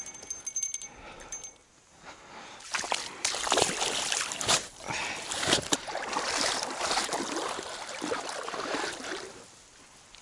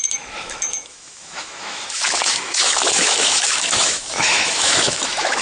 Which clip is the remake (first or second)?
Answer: second